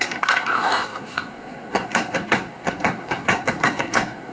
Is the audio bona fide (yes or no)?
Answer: no